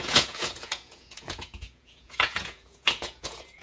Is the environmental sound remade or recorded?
remade